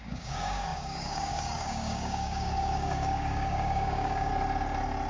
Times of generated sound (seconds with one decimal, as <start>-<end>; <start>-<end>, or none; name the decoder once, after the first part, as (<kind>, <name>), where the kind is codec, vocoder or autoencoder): 0.0-4.3 (codec, DAC)